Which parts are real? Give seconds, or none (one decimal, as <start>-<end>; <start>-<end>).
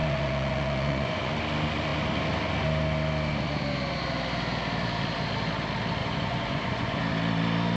1.3-6.0; 7.0-7.8